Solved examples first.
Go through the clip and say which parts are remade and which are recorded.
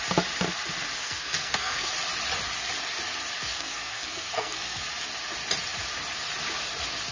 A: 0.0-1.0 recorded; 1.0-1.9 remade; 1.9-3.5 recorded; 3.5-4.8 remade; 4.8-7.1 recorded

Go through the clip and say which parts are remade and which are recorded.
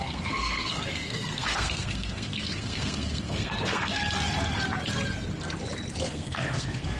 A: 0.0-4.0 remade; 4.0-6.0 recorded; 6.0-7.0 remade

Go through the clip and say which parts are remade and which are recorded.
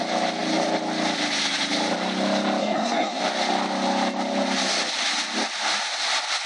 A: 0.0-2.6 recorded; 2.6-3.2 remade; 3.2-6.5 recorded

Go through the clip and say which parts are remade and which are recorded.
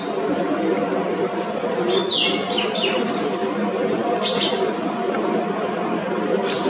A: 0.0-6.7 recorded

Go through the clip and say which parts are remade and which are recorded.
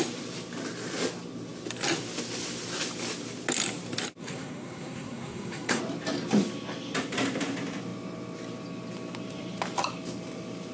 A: 0.0-4.2 recorded; 4.2-5.8 remade; 5.8-10.7 recorded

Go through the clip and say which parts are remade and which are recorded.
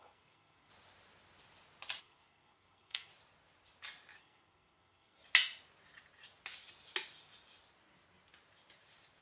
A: 0.0-0.7 remade; 0.7-2.0 recorded; 2.0-3.1 remade; 3.1-4.2 recorded; 4.2-5.2 remade; 5.2-9.2 recorded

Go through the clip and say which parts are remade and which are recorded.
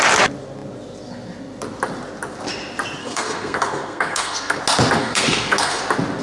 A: 0.0-3.0 recorded; 3.0-4.6 remade; 4.6-5.0 recorded; 5.0-5.8 remade; 5.8-6.2 recorded